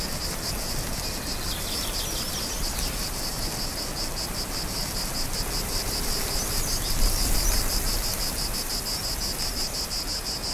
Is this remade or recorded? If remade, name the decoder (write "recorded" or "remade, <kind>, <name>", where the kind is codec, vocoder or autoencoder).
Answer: recorded